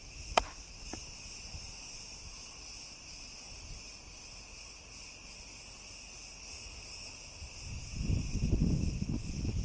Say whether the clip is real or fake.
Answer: real